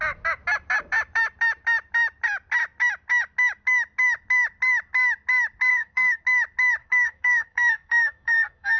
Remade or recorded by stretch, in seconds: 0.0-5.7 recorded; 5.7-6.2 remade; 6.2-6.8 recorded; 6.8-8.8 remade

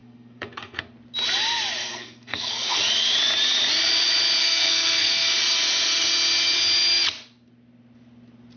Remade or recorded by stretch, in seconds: 0.0-0.8 remade; 0.8-1.8 recorded; 1.8-2.8 remade; 2.8-4.4 recorded; 4.4-5.4 remade; 5.4-8.6 recorded

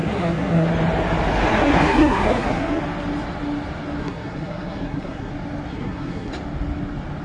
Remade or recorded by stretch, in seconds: 0.0-0.7 remade; 0.7-1.5 recorded; 1.5-2.8 remade; 2.8-4.0 recorded; 4.0-5.3 remade; 5.3-5.7 recorded; 5.7-6.3 remade; 6.3-7.2 recorded